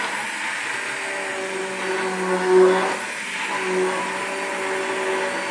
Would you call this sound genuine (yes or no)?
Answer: yes